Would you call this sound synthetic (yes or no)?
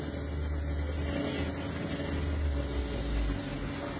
no